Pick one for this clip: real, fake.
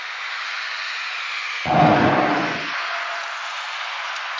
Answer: fake